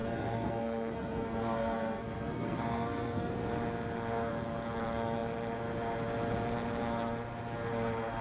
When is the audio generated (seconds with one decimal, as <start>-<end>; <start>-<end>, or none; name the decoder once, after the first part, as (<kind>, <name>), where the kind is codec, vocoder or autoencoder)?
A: 0.0-3.3 (codec, SNAC)